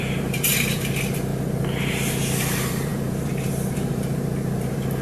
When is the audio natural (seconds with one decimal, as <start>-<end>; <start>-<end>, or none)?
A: 1.3-2.3